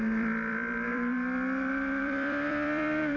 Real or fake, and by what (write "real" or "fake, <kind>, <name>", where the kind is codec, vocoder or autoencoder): fake, vocoder, BigVGAN v2